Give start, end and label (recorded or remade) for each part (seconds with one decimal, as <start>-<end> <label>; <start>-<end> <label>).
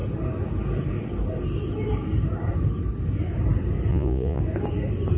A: 0.0-3.9 recorded; 3.9-4.4 remade; 4.4-5.2 recorded